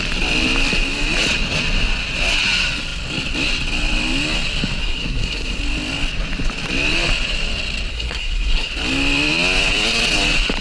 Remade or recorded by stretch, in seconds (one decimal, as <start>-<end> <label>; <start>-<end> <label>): 0.0-4.8 recorded; 4.8-5.6 remade; 5.6-7.9 recorded; 7.9-8.7 remade; 8.7-10.6 recorded